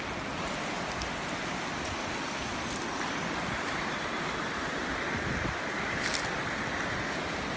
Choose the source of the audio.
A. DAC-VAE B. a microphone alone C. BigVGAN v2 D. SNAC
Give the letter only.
B